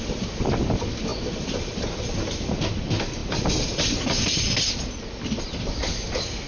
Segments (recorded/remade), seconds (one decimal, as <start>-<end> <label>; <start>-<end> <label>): 0.0-6.5 recorded